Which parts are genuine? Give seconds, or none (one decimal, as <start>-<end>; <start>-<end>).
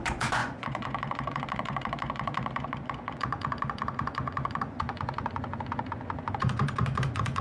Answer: none